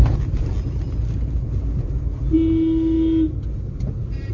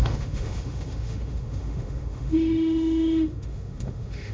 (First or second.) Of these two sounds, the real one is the first